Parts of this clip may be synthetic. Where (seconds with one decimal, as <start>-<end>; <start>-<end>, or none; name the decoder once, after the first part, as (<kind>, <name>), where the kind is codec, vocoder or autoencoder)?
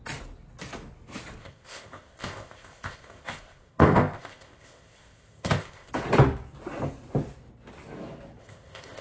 1.4-5.9 (codec, ZipCodec); 8.4-9.0